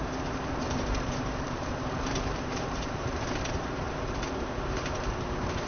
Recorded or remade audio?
remade